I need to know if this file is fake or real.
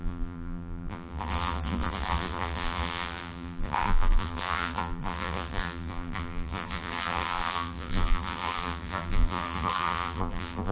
fake